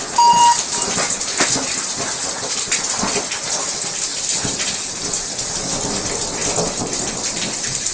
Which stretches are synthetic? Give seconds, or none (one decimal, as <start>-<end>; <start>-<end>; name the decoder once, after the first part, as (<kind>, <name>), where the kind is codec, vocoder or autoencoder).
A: none